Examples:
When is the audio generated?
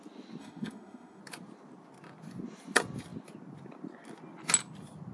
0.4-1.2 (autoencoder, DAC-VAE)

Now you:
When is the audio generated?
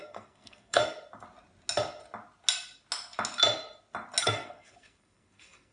0.0-0.8 (codec, SNAC); 4.2-5.7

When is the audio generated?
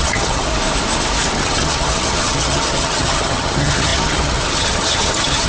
0.0-0.5 (vocoder, HiFi-GAN); 1.3-5.5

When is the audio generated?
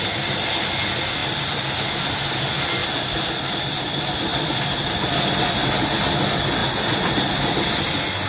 2.8-3.4 (vocoder, BigVGAN v2); 4.3-5.1; 6.6-7.8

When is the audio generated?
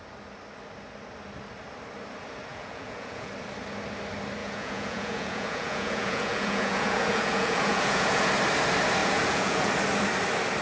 2.5-3.3 (vocoder, Vocos); 4.4-8.3; 9.0-9.7